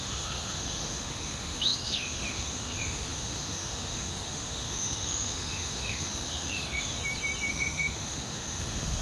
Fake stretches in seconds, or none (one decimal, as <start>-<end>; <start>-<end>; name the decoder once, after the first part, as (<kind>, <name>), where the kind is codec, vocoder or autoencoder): 0.0-7.0 (autoencoder, DAC-VAE); 7.5-9.0